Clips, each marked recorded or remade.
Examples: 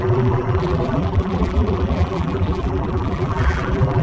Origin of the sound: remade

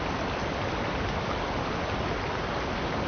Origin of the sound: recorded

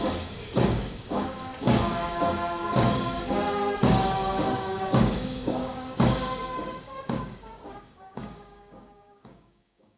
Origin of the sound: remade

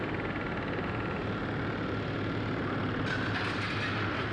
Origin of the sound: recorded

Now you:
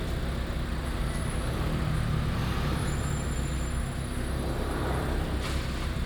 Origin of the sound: recorded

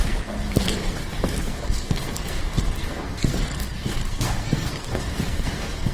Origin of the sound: remade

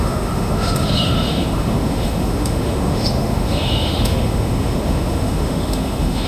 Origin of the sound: remade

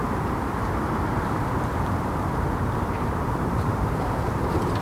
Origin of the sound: remade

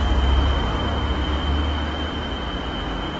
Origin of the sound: recorded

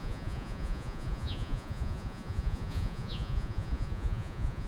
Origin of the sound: remade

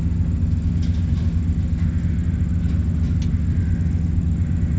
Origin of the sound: recorded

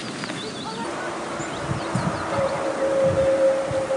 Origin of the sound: recorded